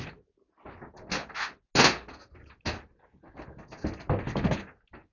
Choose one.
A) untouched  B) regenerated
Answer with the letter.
A